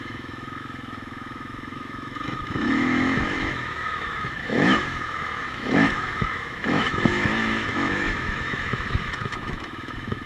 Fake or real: fake